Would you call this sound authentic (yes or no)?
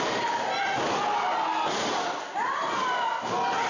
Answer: yes